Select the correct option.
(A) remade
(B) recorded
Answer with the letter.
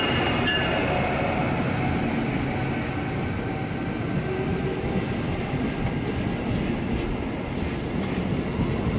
B